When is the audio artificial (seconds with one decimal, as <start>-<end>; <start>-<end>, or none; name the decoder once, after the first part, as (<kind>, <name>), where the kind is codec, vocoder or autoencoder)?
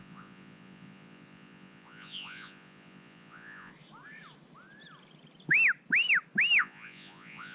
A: 0.0-3.7 (vocoder, Vocos); 6.6-7.5